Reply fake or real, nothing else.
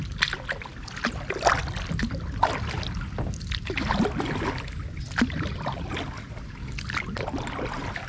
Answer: real